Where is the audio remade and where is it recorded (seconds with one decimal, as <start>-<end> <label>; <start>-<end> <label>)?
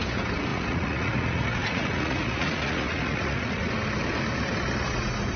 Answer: 0.0-0.5 recorded; 0.5-3.7 remade; 3.7-5.4 recorded